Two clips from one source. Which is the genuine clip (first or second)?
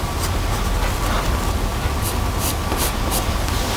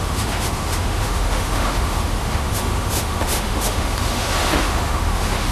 first